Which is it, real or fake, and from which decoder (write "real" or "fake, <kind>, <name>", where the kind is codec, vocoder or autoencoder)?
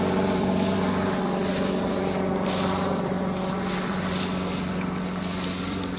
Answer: fake, vocoder, BigVGAN v2